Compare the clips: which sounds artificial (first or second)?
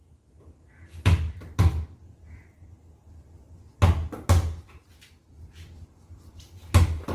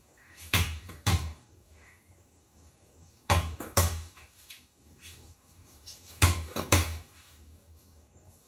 second